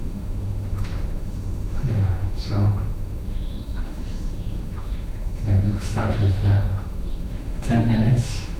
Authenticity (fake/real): fake